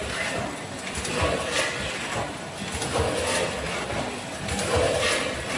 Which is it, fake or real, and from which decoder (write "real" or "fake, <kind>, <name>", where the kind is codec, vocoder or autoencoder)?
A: real